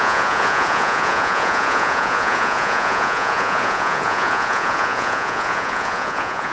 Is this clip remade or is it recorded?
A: remade